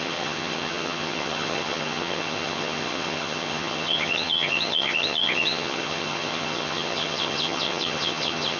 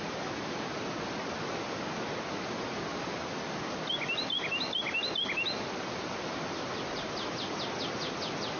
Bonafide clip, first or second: second